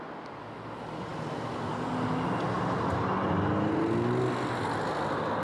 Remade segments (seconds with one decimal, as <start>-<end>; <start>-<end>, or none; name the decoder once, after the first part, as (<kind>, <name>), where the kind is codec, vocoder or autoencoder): none